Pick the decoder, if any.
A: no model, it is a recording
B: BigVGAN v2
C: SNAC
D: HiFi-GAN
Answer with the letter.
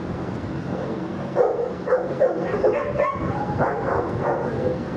C